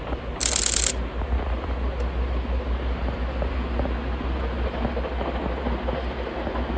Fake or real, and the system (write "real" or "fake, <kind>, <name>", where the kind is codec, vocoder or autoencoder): real